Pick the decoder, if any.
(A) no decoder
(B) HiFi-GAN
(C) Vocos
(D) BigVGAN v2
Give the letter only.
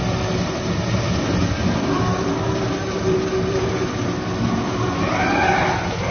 A